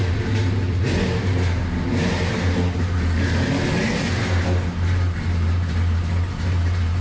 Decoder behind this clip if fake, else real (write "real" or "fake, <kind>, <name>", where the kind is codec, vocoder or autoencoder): real